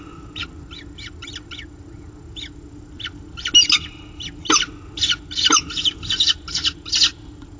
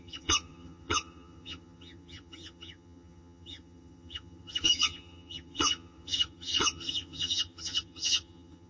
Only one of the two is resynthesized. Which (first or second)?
second